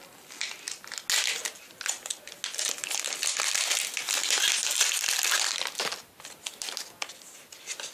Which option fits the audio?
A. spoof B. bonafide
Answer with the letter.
B